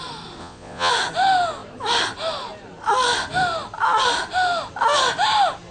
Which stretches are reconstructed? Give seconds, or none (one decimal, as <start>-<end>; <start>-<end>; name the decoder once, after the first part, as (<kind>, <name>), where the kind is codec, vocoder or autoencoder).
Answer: 0.4-0.9 (vocoder, Vocos)